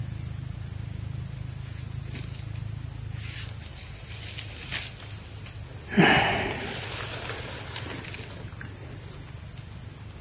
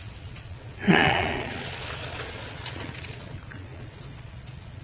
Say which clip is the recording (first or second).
first